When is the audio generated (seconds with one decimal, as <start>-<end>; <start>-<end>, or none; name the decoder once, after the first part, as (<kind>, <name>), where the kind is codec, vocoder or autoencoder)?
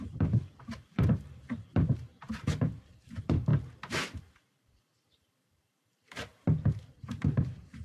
0.0-3.5 (vocoder, BigVGAN v2); 4.2-6.3; 7.0-7.8